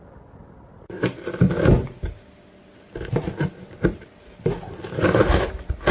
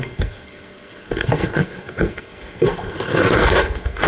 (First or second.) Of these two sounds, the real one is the first